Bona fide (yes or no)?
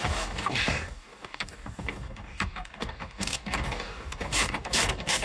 no